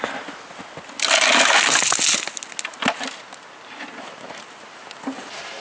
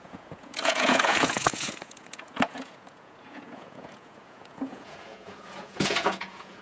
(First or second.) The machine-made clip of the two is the second